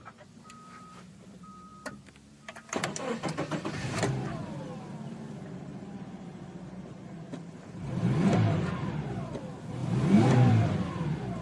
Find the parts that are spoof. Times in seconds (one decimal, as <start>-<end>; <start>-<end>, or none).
0.0-1.7; 2.3-5.7; 6.6-9.8; 10.5-11.4